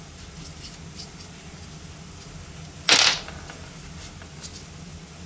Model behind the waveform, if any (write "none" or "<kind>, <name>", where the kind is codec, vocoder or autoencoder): none